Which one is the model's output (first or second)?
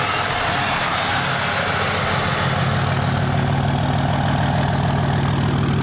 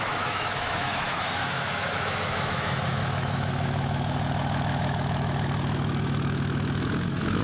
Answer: second